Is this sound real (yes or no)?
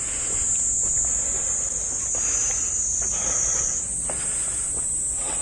yes